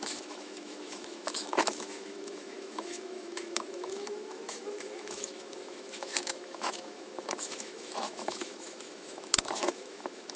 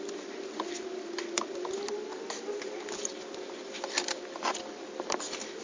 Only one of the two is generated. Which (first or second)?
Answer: first